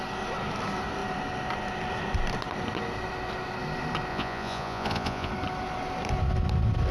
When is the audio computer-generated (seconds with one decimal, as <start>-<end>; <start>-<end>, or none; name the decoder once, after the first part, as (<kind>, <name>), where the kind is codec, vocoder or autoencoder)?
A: 4.1-5.3 (vocoder, Vocos)